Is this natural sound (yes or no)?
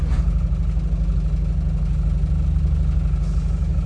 yes